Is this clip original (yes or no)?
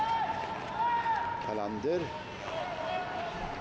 yes